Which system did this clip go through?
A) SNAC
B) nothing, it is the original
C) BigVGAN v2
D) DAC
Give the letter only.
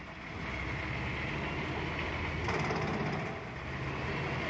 B